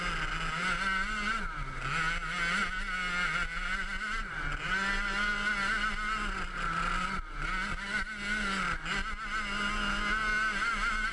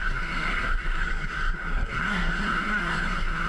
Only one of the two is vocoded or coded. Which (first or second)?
second